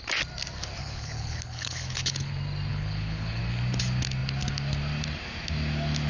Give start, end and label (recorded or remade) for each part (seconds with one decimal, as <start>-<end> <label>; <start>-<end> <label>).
0.0-0.8 recorded; 0.8-2.3 remade; 2.3-2.7 recorded; 2.7-3.4 remade; 3.4-6.1 recorded